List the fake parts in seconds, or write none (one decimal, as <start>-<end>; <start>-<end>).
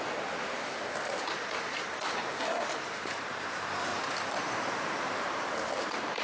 0.0-3.9; 4.7-6.2